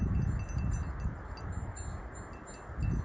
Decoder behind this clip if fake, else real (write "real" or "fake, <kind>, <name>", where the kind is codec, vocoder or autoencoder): real